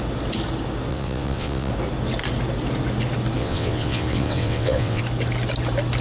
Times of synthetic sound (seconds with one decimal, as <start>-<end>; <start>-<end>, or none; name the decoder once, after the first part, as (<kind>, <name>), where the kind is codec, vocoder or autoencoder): 0.9-1.7 (vocoder, WaveNeXt); 3.4-5.0